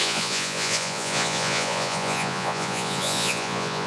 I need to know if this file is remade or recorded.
remade